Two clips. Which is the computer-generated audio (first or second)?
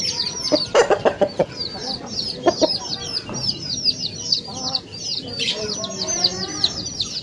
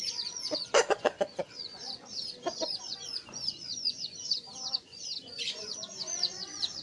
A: second